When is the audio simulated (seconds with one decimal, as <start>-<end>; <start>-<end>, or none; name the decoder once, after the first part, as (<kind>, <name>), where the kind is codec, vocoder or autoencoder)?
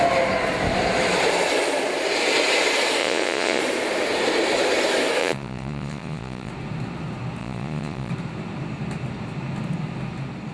3.0-3.6 (vocoder, Vocos); 5.2-6.5; 7.4-8.1